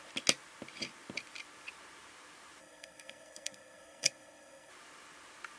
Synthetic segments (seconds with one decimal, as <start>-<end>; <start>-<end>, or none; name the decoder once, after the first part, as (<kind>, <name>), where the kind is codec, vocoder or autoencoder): 2.6-4.7 (codec, SNAC)